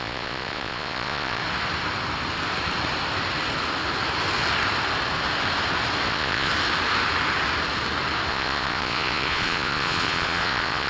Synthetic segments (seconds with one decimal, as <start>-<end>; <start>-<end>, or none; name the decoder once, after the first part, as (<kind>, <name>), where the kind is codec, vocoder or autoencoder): 0.0-1.4 (vocoder, Vocos); 6.1-6.5; 8.3-10.9